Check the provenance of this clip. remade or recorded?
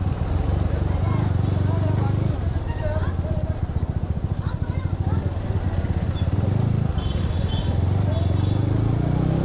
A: recorded